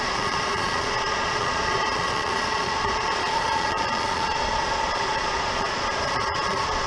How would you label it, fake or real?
fake